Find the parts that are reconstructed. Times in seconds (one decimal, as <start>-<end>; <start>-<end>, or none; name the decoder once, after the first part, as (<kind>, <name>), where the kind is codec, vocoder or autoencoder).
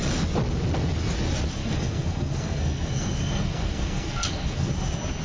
1.6-4.7 (codec, SNAC)